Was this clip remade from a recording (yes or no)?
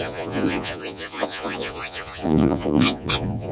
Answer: yes